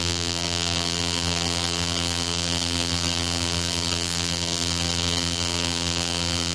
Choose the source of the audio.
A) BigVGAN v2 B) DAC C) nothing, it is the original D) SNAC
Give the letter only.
A